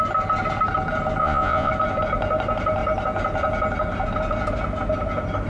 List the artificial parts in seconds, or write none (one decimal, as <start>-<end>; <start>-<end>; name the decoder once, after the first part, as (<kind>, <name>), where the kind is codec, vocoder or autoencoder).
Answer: 1.2-1.7 (vocoder, Vocos)